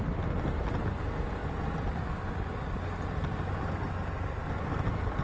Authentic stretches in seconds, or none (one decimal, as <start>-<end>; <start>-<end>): 0.0-5.2